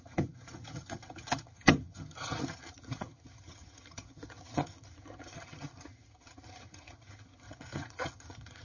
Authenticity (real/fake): fake